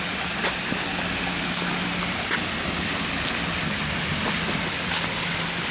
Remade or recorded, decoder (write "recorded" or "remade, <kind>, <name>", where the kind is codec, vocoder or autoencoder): recorded